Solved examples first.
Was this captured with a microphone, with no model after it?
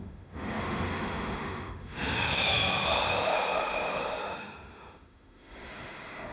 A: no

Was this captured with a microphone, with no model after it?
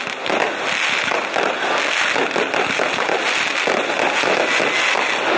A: yes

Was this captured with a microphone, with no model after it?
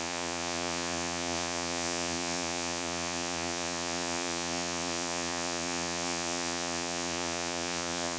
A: no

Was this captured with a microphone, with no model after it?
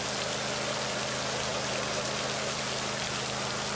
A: yes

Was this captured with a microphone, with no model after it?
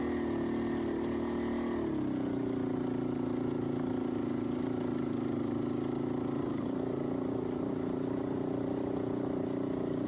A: yes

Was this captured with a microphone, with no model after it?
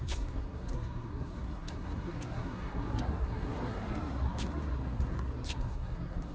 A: no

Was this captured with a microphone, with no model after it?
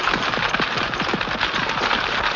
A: yes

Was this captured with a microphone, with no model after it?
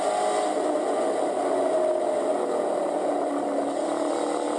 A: yes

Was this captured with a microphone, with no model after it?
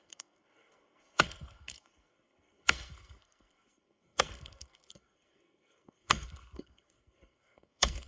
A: no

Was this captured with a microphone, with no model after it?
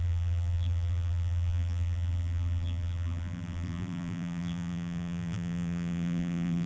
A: no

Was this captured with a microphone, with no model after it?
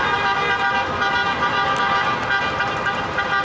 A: yes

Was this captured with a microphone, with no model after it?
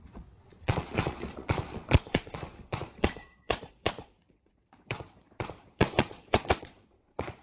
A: no